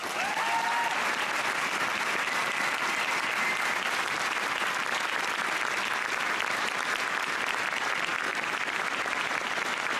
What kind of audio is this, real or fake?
real